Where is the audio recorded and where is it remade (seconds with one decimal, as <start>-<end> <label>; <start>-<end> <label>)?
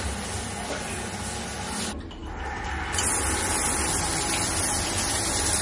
0.0-5.6 recorded